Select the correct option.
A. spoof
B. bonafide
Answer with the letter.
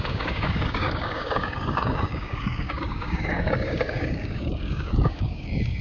A